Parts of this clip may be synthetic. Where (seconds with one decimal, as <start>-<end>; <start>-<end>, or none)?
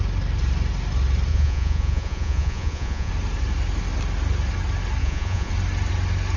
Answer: 1.3-3.1; 5.0-5.5